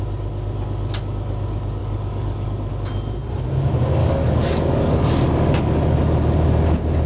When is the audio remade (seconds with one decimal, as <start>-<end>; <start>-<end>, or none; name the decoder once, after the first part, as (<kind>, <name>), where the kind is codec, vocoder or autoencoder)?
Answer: 1.8-2.7 (codec, DAC); 4.0-6.0